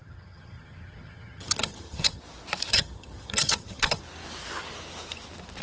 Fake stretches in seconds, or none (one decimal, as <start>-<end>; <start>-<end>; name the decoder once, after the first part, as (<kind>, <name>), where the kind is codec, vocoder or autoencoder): 0.0-2.2 (vocoder, HiFi-GAN); 2.7-4.0